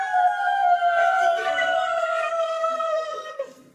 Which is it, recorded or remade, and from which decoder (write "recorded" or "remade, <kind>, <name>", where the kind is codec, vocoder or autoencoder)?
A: remade, codec, SNAC